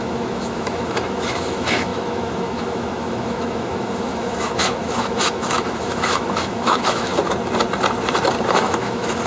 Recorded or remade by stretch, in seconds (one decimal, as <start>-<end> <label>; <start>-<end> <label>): 0.0-7.1 remade; 7.1-8.5 recorded; 8.5-9.3 remade